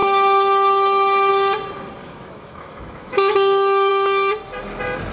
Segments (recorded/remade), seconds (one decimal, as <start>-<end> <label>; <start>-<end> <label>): 0.0-1.3 remade; 1.3-2.0 recorded; 2.0-3.9 remade; 3.9-5.1 recorded